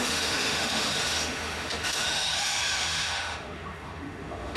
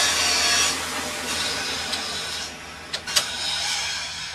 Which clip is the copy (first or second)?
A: first